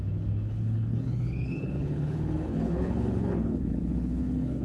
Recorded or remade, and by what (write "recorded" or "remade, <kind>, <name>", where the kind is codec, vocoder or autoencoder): remade, codec, HILCodec